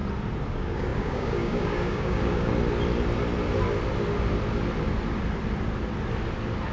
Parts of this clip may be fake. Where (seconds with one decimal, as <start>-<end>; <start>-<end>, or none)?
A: 0.5-2.5